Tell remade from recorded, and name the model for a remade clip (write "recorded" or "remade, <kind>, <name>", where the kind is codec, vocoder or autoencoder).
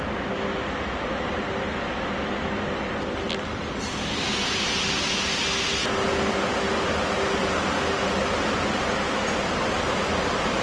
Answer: recorded